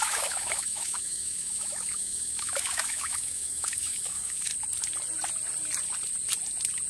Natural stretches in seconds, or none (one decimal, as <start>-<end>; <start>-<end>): 4.5-6.9